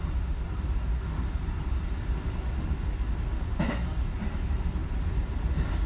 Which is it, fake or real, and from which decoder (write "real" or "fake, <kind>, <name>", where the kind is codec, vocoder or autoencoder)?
real